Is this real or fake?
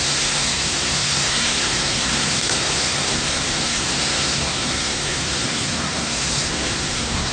fake